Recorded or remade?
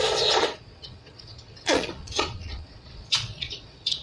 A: remade